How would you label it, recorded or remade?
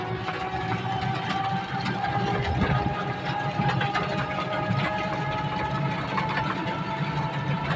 recorded